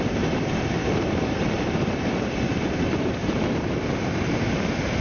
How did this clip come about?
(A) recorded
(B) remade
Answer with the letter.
B